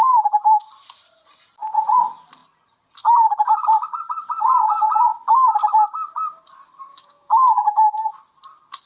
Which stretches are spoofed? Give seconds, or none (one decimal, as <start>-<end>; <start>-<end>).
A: 6.9-8.1